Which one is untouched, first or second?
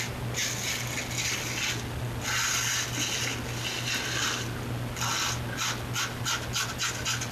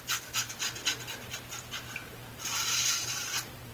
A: first